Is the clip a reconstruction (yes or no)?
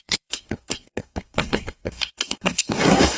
yes